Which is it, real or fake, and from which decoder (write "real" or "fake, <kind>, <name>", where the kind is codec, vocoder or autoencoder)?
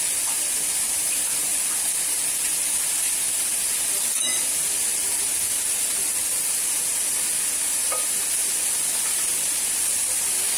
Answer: real